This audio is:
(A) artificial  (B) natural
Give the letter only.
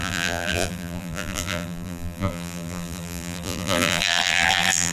A